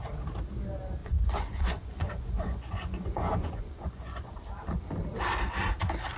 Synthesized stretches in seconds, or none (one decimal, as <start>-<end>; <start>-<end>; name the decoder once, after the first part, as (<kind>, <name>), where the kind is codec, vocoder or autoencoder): 1.0-4.4 (vocoder, Vocos)

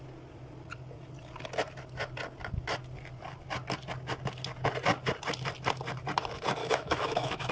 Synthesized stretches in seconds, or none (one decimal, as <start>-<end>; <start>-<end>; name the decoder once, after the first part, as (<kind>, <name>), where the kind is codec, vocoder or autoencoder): 6.6-7.5 (autoencoder, DAC-VAE)